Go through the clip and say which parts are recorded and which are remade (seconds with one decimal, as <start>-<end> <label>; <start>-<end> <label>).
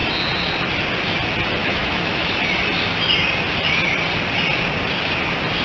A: 0.0-1.6 recorded; 1.6-2.4 remade; 2.4-5.6 recorded